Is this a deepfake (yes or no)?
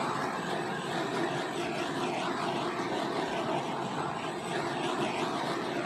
no